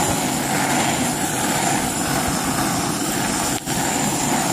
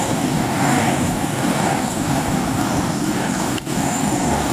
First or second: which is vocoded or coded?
second